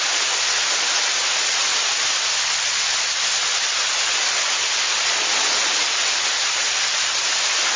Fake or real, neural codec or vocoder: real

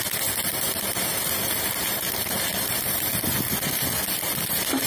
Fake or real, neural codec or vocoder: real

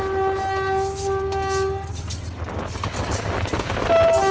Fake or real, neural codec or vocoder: real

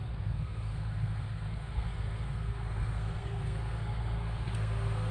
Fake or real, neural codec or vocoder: fake, codec, SNAC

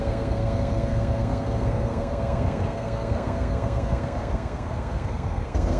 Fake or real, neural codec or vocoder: fake, codec, SNAC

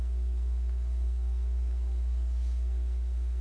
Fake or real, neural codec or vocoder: fake, codec, SNAC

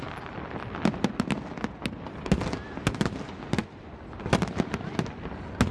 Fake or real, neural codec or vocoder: real